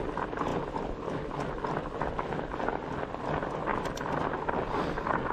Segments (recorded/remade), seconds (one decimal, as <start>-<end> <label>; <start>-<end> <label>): 0.0-5.3 recorded